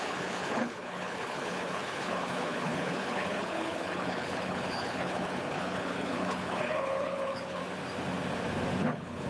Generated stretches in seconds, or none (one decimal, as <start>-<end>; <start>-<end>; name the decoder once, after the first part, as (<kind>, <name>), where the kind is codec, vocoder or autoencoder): 0.0-7.6 (codec, HILCodec); 8.8-9.3